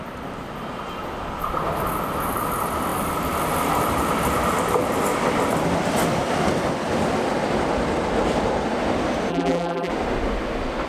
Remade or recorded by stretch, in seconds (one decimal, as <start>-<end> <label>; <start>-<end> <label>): 0.0-9.3 recorded; 9.3-9.9 remade; 9.9-10.9 recorded